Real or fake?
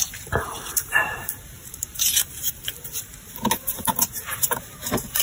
fake